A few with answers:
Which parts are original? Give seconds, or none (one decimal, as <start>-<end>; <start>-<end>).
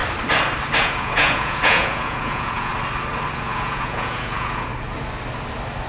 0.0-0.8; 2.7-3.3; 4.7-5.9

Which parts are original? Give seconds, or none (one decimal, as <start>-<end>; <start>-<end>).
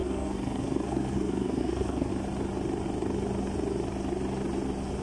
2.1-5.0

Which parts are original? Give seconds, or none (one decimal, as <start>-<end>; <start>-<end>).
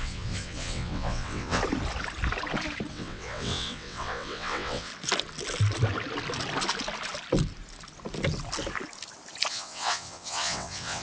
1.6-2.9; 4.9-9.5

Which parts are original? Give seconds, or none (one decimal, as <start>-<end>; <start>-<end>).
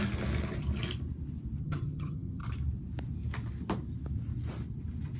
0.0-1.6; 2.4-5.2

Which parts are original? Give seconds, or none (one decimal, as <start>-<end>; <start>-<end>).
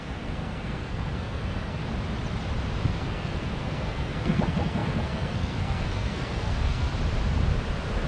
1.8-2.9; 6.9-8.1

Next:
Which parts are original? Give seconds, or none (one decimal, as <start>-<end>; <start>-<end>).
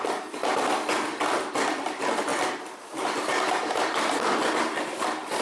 0.0-2.3; 4.1-5.4